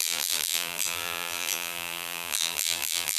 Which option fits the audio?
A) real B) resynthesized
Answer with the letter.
B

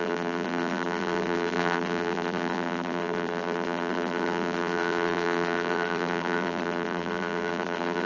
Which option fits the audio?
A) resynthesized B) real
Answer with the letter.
A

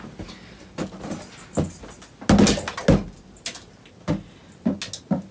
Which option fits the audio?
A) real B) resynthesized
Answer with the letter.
A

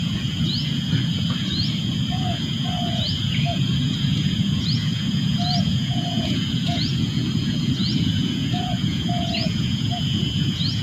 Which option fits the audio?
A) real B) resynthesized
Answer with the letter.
B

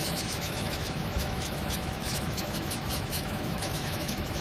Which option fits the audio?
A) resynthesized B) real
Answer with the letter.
A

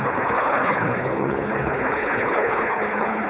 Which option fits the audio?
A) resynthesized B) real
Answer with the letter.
A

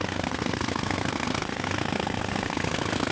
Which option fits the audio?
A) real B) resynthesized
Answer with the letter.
B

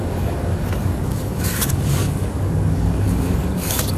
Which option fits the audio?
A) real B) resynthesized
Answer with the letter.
B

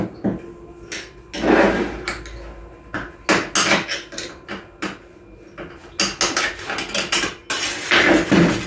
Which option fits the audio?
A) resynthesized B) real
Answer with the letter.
B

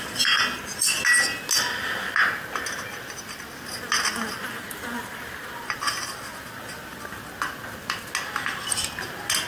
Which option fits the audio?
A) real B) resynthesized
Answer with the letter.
A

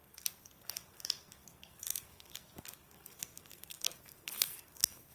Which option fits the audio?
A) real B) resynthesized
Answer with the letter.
B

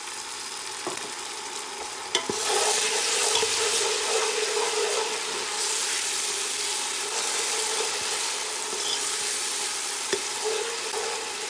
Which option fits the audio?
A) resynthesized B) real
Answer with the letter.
B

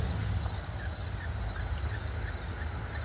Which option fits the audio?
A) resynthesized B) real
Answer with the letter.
B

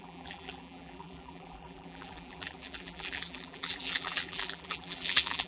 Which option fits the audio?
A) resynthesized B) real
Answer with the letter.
A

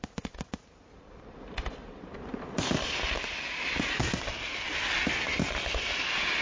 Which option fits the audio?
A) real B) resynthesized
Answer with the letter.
A